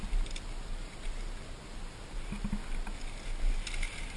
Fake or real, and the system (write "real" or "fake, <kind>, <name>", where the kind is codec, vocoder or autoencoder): real